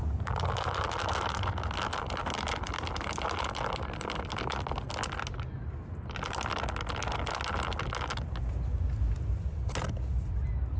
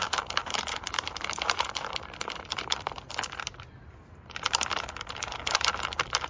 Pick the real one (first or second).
first